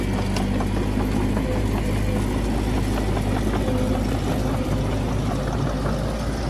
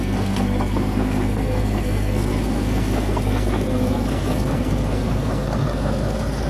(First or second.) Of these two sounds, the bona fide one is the first